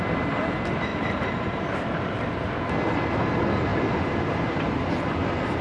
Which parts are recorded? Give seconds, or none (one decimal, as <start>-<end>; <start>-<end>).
0.0-0.9; 2.2-3.7; 4.9-5.6